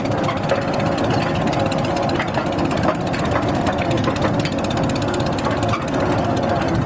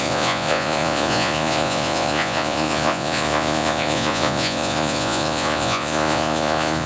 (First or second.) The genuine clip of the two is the first